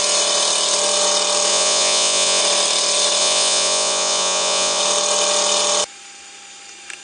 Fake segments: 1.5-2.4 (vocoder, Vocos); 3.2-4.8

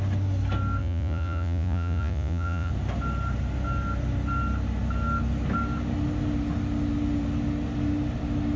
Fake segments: 0.8-2.7 (vocoder, Vocos)

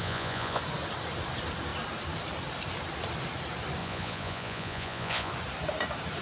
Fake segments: 0.0-0.6 (vocoder, Vocos); 3.8-5.3

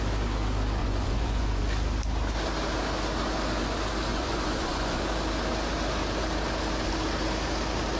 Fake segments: 0.8-1.6 (vocoder, Vocos); 4.1-5.0

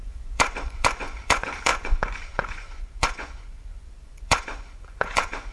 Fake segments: 0.0-5.5 (vocoder, Vocos)

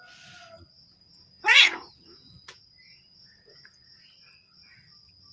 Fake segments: 0.9-4.1 (vocoder, Vocos)

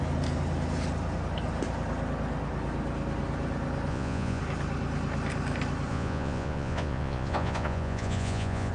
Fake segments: 3.9-4.4 (vocoder, Vocos); 5.9-8.7

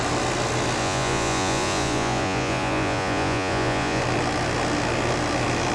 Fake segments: 0.8-4.0 (vocoder, Vocos)